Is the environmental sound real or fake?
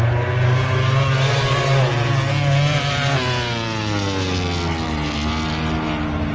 real